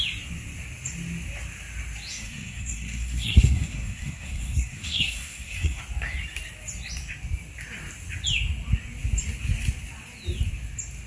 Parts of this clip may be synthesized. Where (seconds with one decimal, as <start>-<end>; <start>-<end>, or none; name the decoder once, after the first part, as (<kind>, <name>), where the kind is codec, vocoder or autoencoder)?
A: 2.1-5.8 (codec, SNAC)